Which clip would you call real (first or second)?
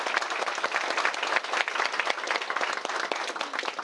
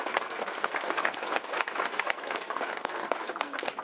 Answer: first